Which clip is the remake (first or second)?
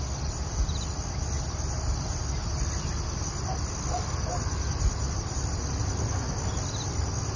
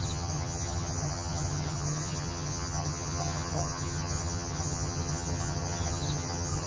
second